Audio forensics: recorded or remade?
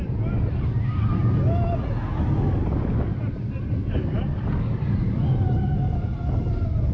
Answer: recorded